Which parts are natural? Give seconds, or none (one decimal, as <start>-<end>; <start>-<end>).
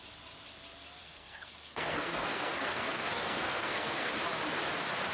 0.0-1.0; 4.1-5.1